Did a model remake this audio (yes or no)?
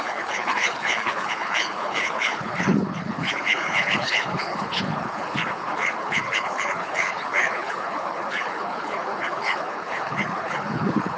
yes